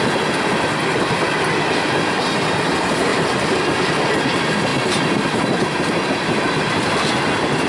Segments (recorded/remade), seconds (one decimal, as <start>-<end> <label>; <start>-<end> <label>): 0.0-4.7 recorded; 4.7-5.6 remade; 5.6-7.7 recorded